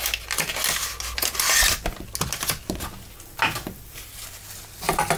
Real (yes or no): yes